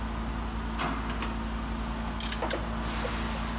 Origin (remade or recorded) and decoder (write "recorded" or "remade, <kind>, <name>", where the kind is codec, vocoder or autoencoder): recorded